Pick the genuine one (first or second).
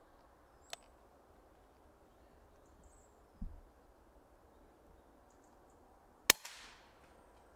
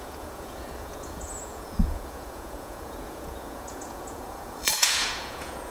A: first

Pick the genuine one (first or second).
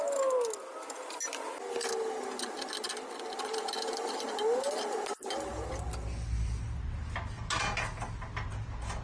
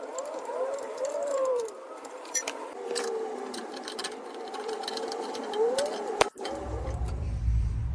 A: first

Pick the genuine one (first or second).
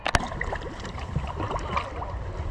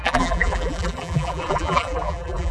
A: first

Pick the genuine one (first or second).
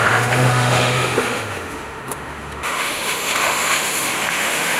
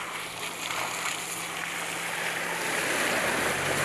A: second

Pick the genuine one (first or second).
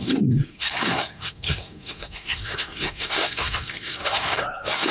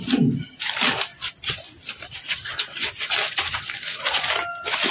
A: second